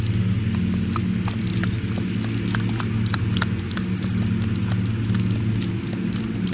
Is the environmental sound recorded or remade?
recorded